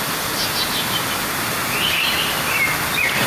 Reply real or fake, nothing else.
real